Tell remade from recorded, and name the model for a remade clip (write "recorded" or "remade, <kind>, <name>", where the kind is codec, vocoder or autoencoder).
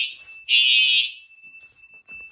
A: recorded